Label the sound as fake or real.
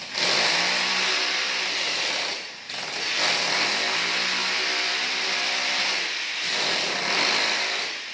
real